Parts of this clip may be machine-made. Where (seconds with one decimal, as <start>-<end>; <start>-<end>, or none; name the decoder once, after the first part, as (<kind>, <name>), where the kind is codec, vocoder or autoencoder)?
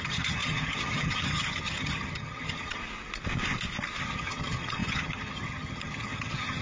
0.0-2.8 (vocoder, HiFi-GAN); 4.0-6.6